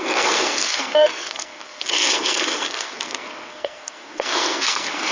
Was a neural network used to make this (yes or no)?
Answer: yes